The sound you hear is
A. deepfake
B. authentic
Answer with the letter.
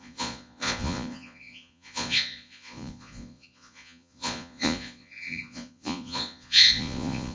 A